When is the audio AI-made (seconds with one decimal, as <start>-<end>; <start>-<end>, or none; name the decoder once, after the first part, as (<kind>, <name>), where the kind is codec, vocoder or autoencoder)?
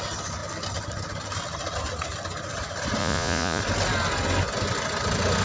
3.0-3.6 (vocoder, Vocos)